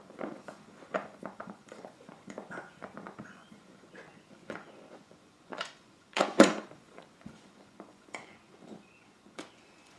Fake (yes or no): yes